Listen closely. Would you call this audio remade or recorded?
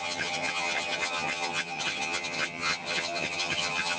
remade